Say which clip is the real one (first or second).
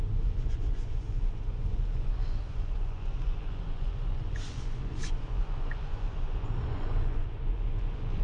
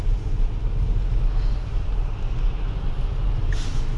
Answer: second